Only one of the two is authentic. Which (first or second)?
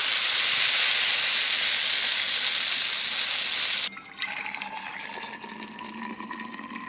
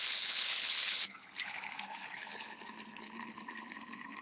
first